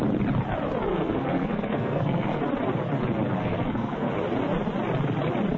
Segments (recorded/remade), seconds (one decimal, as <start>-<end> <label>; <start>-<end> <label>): 0.0-0.9 recorded; 0.9-2.4 remade; 2.4-3.4 recorded; 3.4-4.1 remade; 4.1-5.6 recorded